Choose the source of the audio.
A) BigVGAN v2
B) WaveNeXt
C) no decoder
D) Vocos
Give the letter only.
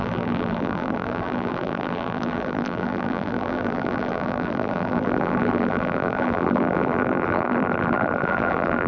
A